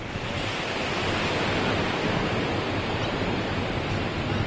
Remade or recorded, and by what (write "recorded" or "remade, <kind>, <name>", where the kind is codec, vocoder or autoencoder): recorded